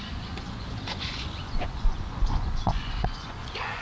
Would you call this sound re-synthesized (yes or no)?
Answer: yes